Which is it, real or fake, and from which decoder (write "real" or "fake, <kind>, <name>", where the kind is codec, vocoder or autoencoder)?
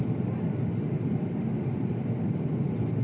fake, vocoder, BigVGAN v2